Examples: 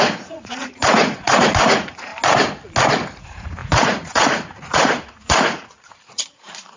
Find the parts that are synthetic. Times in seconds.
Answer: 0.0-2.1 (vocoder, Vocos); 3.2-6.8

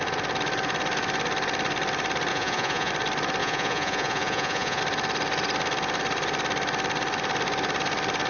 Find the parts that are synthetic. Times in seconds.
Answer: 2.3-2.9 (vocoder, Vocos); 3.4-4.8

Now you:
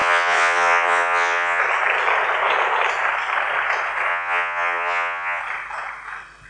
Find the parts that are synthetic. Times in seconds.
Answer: 0.0-1.6 (vocoder, Vocos); 4.1-5.4

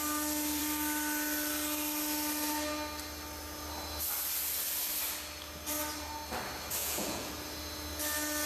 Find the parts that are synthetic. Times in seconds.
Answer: 6.8-7.3 (vocoder, Vocos)

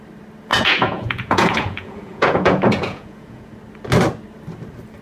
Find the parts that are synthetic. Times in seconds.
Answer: 0.5-3.5 (vocoder, Vocos)

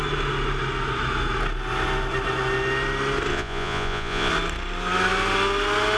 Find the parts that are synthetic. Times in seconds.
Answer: 3.3-4.3 (vocoder, Vocos)